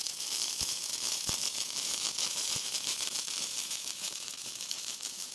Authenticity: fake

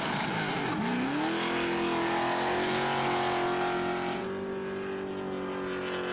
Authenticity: real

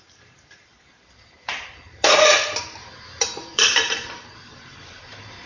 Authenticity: fake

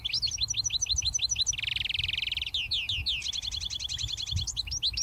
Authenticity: real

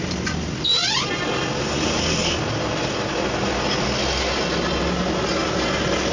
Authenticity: real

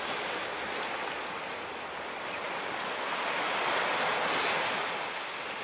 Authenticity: real